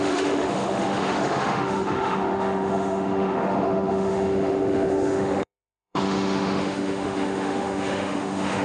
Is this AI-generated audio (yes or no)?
yes